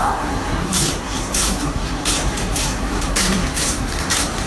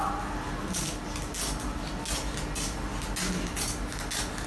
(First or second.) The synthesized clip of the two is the first